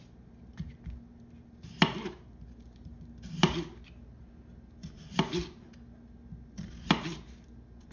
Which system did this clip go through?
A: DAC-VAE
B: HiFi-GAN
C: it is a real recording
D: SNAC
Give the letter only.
C